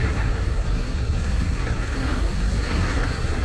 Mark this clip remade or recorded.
remade